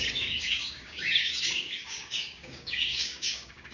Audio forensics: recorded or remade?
remade